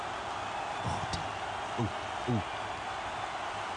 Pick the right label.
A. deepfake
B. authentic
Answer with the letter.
B